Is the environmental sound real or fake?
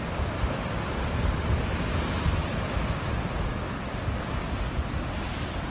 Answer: real